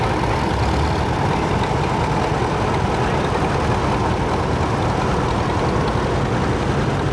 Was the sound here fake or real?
real